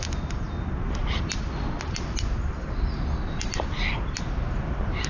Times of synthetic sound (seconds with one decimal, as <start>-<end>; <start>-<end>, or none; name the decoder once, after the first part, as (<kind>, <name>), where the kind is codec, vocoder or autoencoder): none